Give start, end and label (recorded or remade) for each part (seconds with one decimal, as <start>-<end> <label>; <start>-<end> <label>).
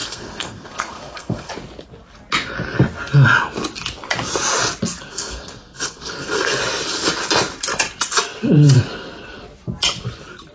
0.0-1.5 remade; 1.5-5.1 recorded; 5.1-6.6 remade; 6.6-10.5 recorded